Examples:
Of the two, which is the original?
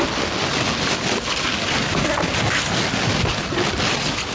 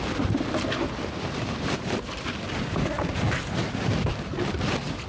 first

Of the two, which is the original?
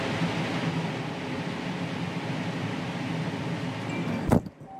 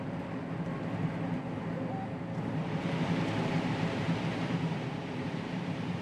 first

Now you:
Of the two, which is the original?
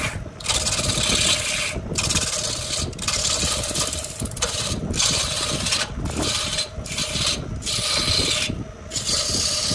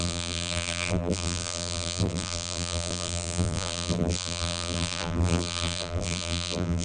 first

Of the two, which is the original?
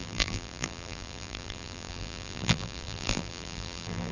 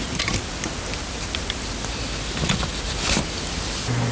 second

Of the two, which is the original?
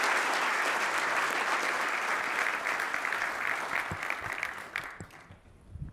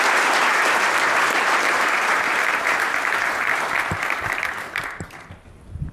first